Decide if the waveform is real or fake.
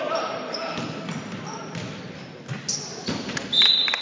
real